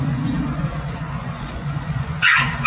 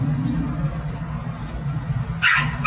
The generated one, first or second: first